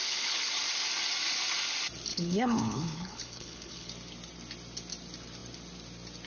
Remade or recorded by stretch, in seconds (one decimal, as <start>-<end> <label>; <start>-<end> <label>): 0.0-0.5 remade; 0.5-2.1 recorded; 2.1-3.9 remade; 3.9-6.3 recorded